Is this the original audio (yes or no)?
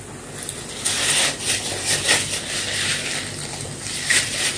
yes